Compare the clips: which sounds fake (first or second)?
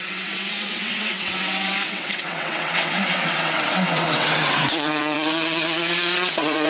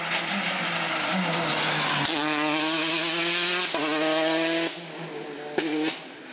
first